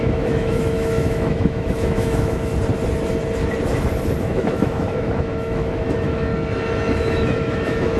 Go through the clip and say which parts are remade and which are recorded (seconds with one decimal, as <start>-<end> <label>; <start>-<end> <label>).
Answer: 0.0-2.5 remade; 2.5-4.2 recorded; 4.2-6.3 remade; 6.3-6.9 recorded; 6.9-8.0 remade